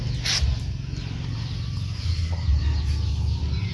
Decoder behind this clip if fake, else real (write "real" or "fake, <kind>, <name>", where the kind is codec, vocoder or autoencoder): real